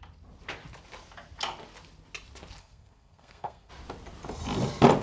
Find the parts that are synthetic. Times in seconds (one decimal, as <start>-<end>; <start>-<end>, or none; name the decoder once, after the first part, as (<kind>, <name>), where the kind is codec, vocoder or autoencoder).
2.6-3.7 (codec, SNAC)